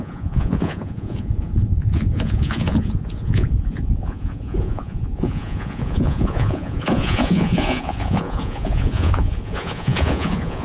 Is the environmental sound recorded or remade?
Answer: remade